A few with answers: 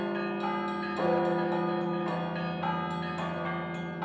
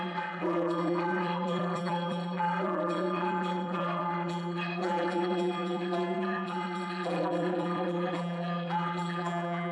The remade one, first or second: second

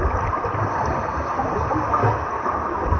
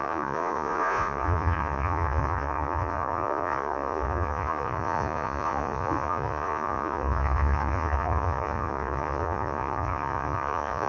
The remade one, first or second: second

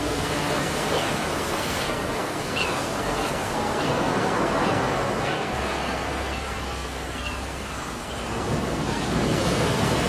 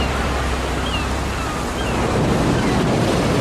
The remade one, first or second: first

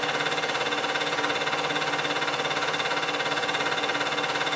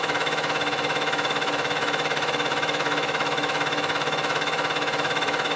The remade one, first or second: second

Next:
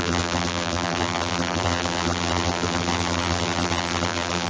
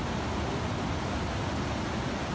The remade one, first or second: first